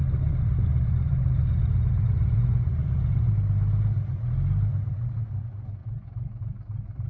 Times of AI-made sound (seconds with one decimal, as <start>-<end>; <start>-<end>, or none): 0.0-3.3; 5.8-6.4